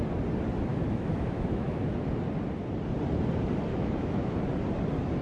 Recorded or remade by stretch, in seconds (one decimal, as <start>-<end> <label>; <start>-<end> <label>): 0.0-0.7 recorded; 0.7-1.8 remade; 1.8-3.7 recorded; 3.7-4.4 remade; 4.4-5.2 recorded